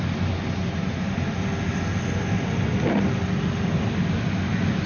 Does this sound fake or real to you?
real